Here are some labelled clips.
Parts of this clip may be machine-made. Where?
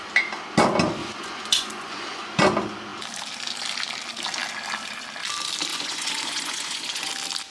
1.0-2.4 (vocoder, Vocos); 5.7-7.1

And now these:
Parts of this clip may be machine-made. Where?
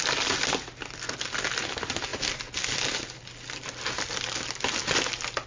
none